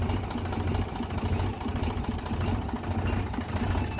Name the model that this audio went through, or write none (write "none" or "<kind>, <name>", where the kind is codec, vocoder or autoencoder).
none